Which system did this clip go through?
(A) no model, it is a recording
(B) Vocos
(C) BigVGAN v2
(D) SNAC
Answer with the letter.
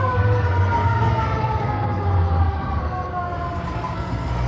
D